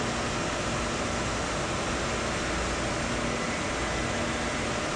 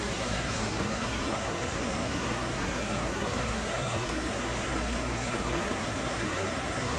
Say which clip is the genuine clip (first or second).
first